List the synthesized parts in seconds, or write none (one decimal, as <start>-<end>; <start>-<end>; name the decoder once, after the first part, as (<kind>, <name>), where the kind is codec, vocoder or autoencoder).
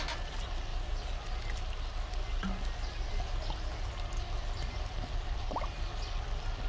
none